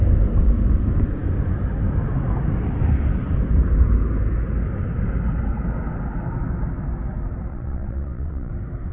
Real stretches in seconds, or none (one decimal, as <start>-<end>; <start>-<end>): 0.0-7.5; 8.5-8.9